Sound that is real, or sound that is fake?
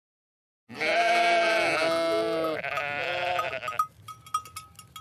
real